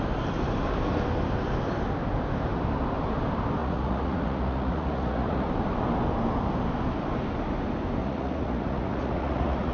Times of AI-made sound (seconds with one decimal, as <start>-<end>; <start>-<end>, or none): 3.6-5.5; 8.0-9.7